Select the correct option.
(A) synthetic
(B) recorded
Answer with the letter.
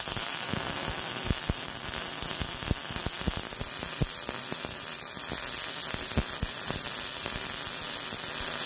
B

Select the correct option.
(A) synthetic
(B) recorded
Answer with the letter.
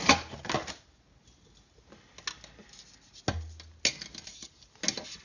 B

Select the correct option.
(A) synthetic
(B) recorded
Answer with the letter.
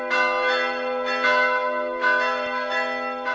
B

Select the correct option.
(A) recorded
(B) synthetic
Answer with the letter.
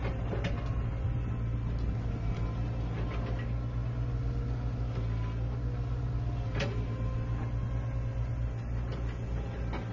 A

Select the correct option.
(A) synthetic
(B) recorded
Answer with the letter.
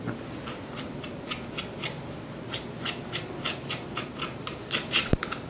B